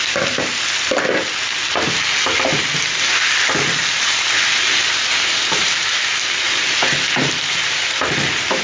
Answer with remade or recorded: recorded